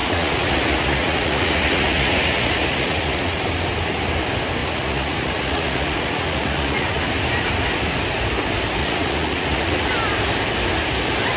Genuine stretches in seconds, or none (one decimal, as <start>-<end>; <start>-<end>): 3.4-4.6; 7.0-8.8; 9.9-11.4